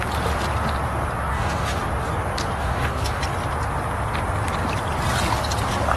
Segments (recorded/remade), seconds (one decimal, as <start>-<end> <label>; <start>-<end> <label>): 0.0-1.3 recorded; 1.3-1.8 remade; 1.8-2.6 recorded; 2.6-3.2 remade; 3.2-6.0 recorded

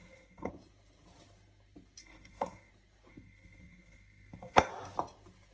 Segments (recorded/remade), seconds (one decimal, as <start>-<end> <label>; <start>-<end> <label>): 0.0-0.5 remade; 0.5-2.0 recorded; 2.0-2.7 remade; 2.7-3.1 recorded; 3.1-4.7 remade; 4.7-5.5 recorded

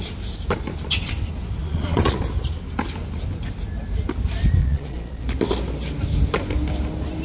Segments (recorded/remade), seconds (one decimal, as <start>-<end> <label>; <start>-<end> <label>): 0.0-1.6 recorded; 1.6-2.2 remade; 2.2-4.6 recorded; 4.6-5.2 remade; 5.2-7.2 recorded

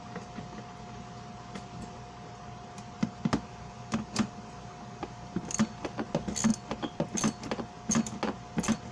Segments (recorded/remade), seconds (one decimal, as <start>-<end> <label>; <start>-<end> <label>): 0.0-8.9 recorded

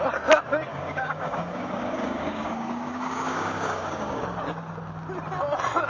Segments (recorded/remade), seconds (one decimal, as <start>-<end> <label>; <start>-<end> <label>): 0.0-0.7 recorded; 0.7-4.2 remade; 4.2-5.9 recorded

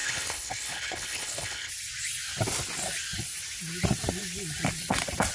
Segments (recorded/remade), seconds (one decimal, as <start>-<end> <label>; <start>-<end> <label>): 0.0-1.7 remade; 1.7-5.3 recorded